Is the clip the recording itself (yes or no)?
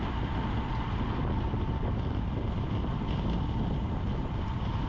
yes